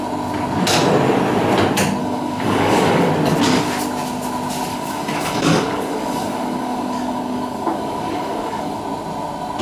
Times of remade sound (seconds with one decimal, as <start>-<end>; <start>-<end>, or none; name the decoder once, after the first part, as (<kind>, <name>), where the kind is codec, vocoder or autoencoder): 2.0-3.1 (codec, DAC); 4.7-8.8